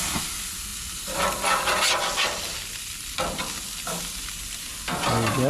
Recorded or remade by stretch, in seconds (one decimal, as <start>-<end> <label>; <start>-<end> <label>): 0.0-5.5 recorded